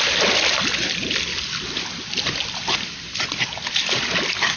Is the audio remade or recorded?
recorded